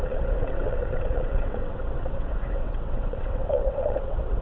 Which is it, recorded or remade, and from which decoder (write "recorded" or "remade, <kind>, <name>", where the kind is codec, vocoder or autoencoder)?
remade, vocoder, WaveNeXt